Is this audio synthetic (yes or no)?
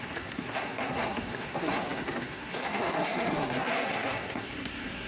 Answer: yes